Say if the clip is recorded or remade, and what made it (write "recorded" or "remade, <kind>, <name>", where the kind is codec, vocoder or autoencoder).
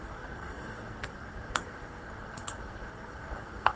remade, codec, SNAC